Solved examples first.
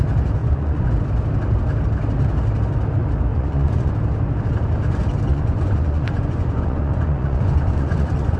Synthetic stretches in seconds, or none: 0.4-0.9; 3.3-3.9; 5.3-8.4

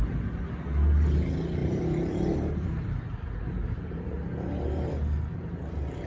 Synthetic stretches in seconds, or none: 1.6-4.9

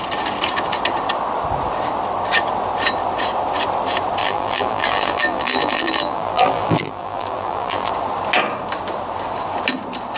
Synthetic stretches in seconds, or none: 4.2-7.9

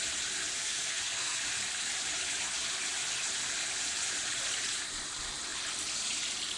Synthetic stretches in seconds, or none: 0.6-1.4

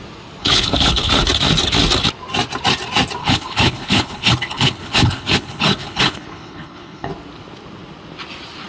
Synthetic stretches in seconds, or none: 0.4-1.1; 3.2-7.1

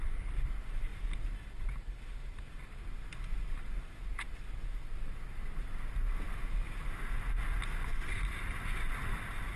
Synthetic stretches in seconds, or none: none